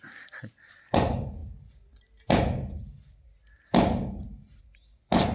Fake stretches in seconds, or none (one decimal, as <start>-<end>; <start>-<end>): none